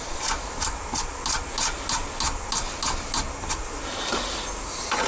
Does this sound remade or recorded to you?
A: recorded